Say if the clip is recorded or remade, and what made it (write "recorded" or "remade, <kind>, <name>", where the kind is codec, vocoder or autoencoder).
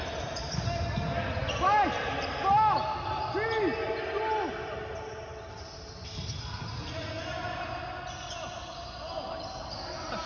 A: recorded